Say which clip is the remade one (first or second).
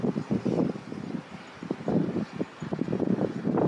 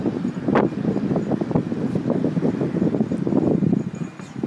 first